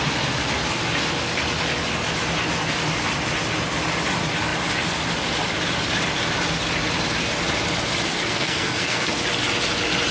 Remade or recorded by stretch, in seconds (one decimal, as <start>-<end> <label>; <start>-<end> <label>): 0.0-8.1 recorded; 8.1-9.1 remade; 9.1-10.1 recorded